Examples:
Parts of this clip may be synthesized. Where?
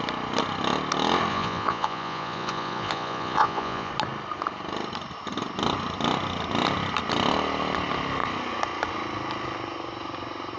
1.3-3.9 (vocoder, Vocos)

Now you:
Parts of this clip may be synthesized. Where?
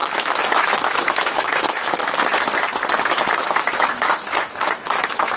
0.0-2.0 (autoencoder, DAC-VAE); 3.0-5.4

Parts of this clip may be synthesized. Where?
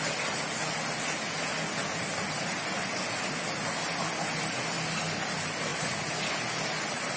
none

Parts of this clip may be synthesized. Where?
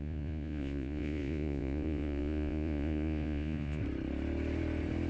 0.0-3.8 (vocoder, Vocos)